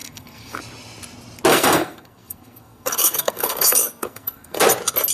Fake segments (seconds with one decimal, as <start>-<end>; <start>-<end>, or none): 0.0-0.6; 1.5-4.6